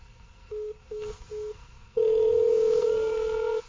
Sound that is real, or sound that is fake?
fake